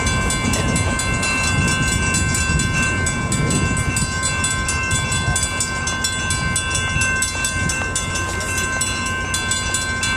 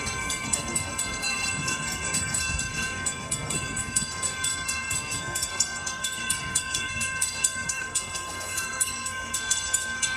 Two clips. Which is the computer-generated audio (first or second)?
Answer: second